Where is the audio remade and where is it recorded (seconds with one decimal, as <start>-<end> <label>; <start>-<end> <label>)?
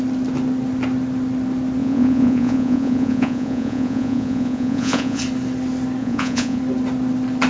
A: 0.0-1.8 recorded; 1.8-5.2 remade; 5.2-6.0 recorded; 6.0-6.6 remade; 6.6-7.5 recorded